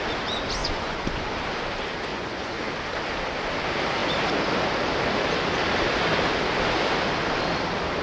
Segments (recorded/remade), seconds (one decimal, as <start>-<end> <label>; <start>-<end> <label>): 0.0-0.6 recorded; 0.6-1.3 remade; 1.3-2.1 recorded; 2.1-2.6 remade; 2.6-8.0 recorded